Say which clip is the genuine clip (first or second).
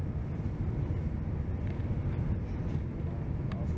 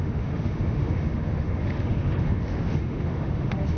first